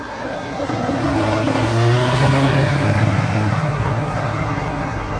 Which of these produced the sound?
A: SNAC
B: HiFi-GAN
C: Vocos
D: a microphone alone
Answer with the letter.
A